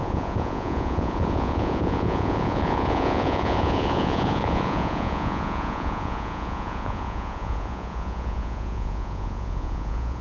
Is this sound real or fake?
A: fake